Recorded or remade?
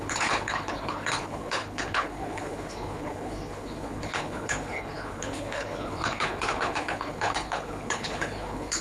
remade